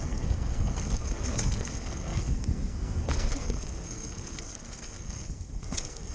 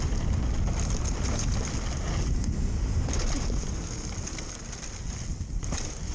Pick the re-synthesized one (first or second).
first